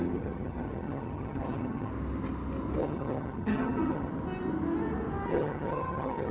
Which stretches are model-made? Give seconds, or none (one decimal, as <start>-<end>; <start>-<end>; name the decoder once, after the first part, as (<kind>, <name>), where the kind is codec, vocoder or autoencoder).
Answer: 0.0-1.9 (vocoder, HiFi-GAN); 2.8-4.1; 5.3-6.3